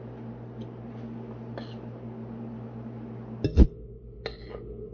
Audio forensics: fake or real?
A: real